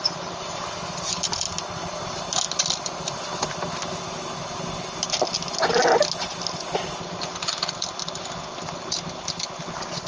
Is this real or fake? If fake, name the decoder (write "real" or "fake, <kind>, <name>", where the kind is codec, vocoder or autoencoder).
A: real